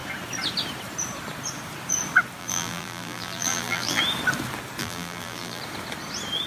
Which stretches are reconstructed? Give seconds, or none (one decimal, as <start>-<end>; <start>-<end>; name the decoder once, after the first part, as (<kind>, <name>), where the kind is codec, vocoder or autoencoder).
2.4-4.0 (vocoder, BigVGAN v2); 4.8-5.6